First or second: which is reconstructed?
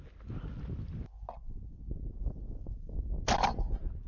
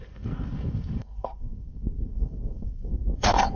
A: second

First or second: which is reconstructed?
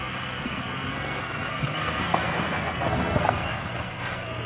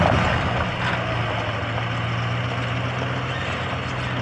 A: first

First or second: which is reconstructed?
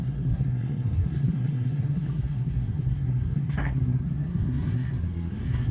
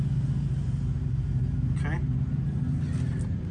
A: first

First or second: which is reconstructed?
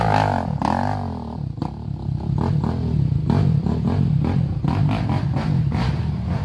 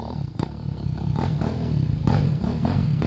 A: second